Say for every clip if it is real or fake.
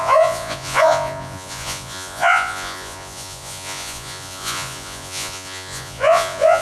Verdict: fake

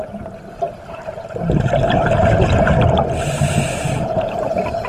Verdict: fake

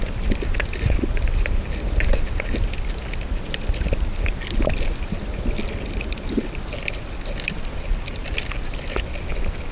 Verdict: real